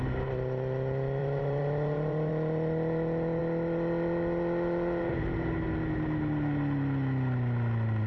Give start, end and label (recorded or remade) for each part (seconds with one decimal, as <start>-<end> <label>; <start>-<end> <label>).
0.0-1.2 recorded; 1.2-2.3 remade; 2.3-8.1 recorded